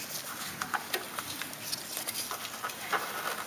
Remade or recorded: recorded